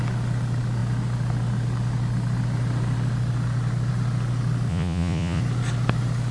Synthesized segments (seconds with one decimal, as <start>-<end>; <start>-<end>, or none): 4.7-5.4